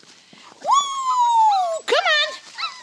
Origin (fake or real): real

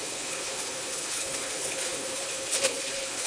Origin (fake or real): fake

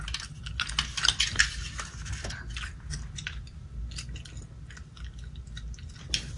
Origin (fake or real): real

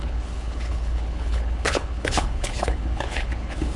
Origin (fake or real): fake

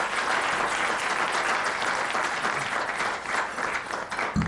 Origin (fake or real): real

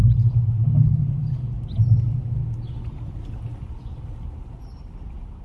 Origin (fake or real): real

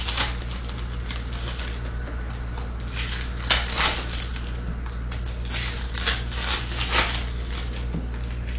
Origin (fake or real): real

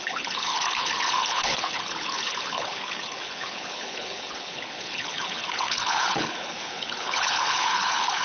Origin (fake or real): fake